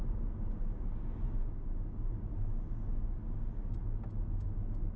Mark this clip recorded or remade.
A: recorded